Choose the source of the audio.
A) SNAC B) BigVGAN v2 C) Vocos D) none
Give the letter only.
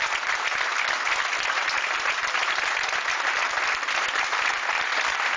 D